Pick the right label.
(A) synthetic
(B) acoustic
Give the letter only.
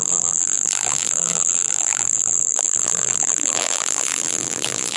A